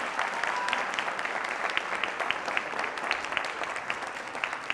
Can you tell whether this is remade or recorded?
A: recorded